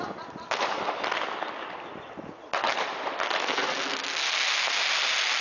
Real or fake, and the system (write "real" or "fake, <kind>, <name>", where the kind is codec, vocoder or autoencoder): real